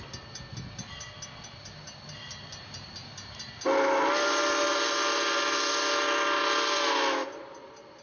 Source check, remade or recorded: recorded